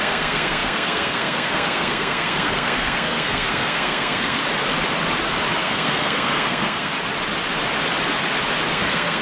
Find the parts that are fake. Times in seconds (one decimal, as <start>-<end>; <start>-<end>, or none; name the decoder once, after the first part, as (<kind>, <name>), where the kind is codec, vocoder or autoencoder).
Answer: 0.0-4.4 (codec, SNAC); 5.6-6.9; 8.7-9.2